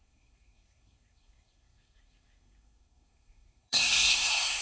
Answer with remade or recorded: remade